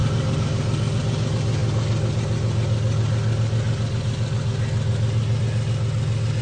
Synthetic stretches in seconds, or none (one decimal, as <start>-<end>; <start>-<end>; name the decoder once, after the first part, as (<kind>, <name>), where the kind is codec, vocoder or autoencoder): none